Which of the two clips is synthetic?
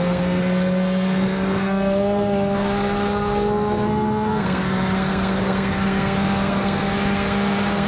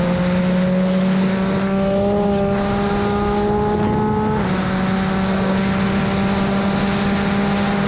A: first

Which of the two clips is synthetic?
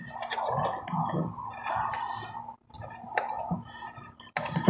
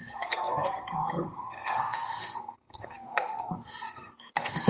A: second